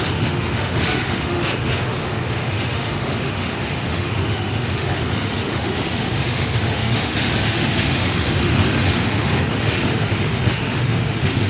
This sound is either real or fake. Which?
fake